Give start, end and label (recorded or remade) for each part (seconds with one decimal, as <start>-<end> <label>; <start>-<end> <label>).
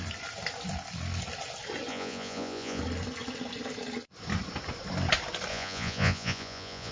0.0-1.9 recorded; 1.9-2.8 remade; 2.8-5.5 recorded; 5.5-6.9 remade